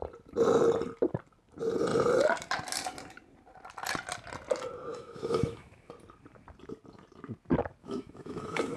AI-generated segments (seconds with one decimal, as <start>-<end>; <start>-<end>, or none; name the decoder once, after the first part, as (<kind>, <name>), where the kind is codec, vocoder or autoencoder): 4.9-5.9 (autoencoder, DAC-VAE); 7.8-8.8